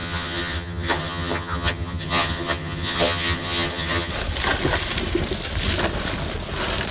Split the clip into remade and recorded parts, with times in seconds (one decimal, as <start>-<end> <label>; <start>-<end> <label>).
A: 0.0-4.1 remade; 4.1-6.9 recorded